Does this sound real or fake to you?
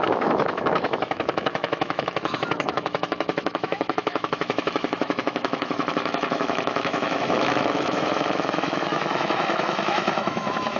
fake